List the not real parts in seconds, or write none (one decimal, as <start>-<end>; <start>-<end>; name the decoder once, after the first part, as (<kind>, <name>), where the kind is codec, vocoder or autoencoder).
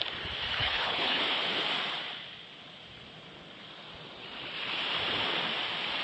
0.6-1.2 (codec, HILCodec)